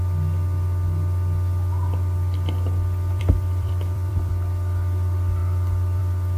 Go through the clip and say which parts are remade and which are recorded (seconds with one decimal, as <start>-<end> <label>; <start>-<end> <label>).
0.0-3.1 recorded; 3.1-4.3 remade; 4.3-6.4 recorded